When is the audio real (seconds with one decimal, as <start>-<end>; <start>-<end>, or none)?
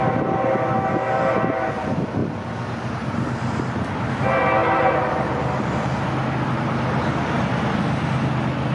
0.0-4.6; 6.0-8.7